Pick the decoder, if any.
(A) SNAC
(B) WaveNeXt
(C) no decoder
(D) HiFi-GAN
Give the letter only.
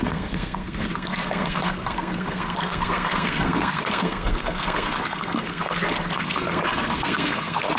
A